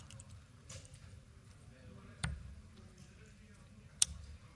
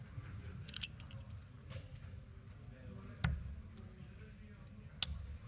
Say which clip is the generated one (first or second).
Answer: first